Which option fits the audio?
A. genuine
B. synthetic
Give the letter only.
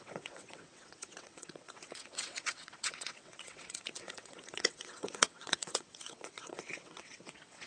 B